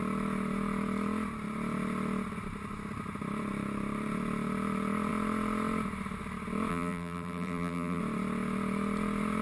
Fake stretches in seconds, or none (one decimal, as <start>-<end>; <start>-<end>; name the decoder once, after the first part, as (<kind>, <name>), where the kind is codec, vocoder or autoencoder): 6.7-8.0 (vocoder, BigVGAN v2)